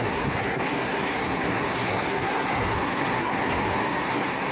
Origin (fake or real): fake